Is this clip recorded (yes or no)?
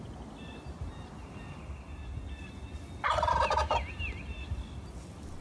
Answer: yes